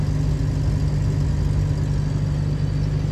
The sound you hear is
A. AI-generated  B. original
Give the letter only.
B